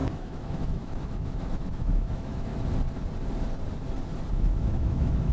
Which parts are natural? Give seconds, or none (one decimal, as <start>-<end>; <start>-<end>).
2.5-4.3